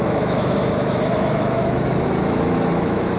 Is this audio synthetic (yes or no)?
yes